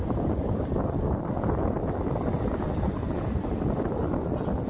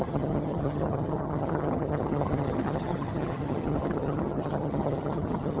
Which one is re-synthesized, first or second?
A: second